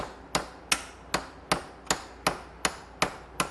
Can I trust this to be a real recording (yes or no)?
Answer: yes